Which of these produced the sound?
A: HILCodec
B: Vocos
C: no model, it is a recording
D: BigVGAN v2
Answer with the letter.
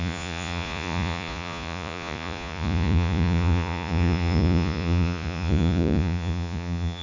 B